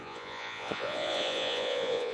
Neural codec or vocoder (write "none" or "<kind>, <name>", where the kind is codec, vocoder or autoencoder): vocoder, Vocos